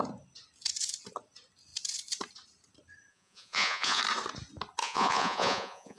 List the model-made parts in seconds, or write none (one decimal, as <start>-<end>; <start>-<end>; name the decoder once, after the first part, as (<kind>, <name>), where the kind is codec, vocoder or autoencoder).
3.1-4.0 (vocoder, Vocos); 4.8-6.0